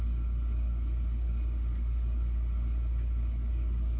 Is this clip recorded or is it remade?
recorded